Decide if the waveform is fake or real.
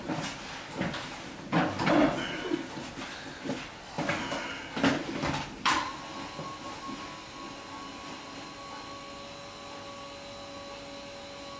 real